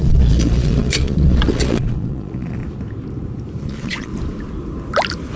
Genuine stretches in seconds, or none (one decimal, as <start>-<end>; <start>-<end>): 2.6-3.6; 4.1-5.4